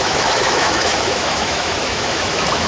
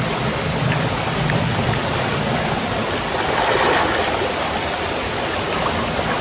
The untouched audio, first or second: second